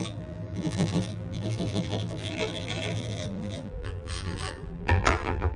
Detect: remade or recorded remade